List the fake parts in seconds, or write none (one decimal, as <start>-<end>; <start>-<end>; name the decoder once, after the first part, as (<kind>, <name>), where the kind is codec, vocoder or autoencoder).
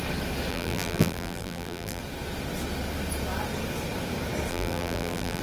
0.5-2.0 (vocoder, BigVGAN v2); 4.5-5.4